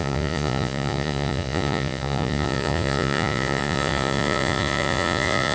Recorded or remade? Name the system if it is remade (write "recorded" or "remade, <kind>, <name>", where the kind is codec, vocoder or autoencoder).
remade, vocoder, Vocos